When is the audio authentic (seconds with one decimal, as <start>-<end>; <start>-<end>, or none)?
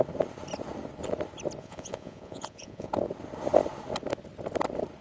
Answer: 0.0-1.6; 2.9-5.0